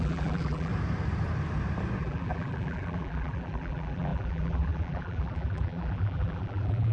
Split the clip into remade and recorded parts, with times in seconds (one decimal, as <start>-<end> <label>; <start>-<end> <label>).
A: 0.0-0.7 remade; 0.7-2.0 recorded; 2.0-6.9 remade